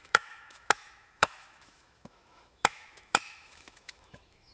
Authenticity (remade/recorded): remade